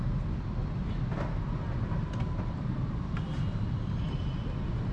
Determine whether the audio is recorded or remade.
recorded